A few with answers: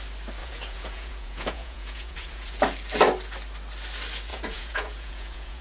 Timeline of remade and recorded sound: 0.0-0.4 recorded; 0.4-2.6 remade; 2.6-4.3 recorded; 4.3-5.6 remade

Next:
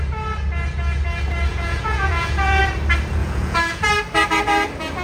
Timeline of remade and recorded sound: 0.0-1.5 recorded; 1.5-2.6 remade; 2.6-3.2 recorded; 3.2-3.8 remade; 3.8-5.0 recorded

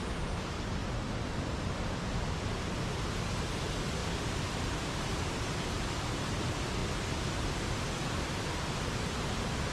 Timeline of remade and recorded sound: 0.0-9.7 recorded

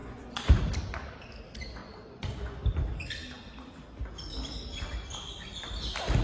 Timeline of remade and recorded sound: 0.0-0.6 remade; 0.6-1.8 recorded; 1.8-2.6 remade; 2.6-6.2 recorded